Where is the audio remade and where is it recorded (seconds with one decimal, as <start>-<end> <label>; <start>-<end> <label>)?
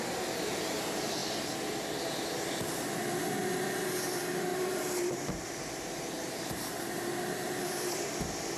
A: 0.0-4.5 recorded; 4.5-8.0 remade; 8.0-8.6 recorded